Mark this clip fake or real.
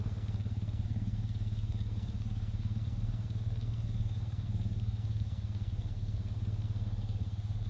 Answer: fake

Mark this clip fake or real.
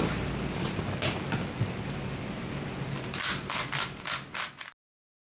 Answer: real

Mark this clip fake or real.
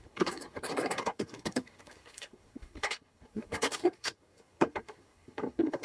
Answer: fake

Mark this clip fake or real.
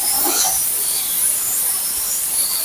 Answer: fake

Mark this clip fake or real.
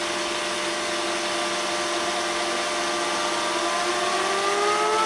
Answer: real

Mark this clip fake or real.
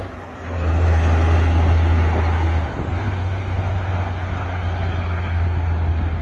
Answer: real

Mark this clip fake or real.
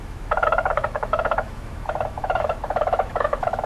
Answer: fake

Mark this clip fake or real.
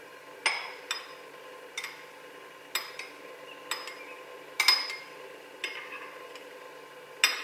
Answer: real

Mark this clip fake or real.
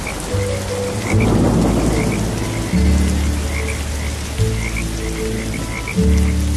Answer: real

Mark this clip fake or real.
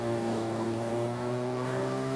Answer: fake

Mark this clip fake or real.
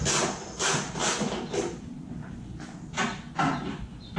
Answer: real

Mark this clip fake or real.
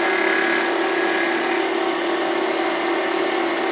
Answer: real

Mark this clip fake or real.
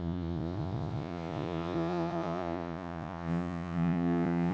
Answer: fake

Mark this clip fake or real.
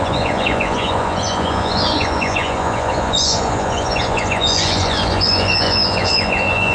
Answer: fake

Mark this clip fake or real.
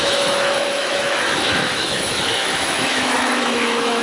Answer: fake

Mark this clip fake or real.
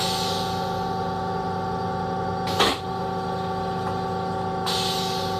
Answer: real